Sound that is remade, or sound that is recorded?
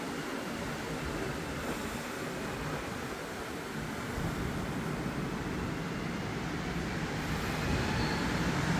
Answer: recorded